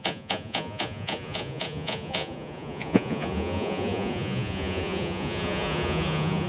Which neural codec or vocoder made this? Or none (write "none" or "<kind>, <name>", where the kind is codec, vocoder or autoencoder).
vocoder, Vocos